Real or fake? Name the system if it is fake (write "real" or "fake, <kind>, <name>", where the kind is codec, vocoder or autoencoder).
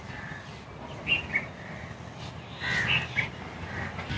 real